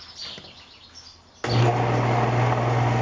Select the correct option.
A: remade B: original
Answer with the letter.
B